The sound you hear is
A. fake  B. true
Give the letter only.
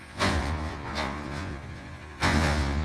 A